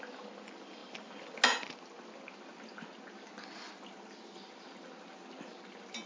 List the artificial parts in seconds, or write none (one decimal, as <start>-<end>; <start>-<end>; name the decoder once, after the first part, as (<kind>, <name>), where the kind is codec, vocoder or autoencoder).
none